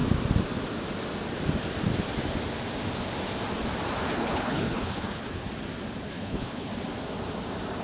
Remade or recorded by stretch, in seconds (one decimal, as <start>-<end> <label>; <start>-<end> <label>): 0.0-4.1 recorded; 4.1-5.5 remade; 5.5-6.1 recorded; 6.1-6.7 remade; 6.7-7.8 recorded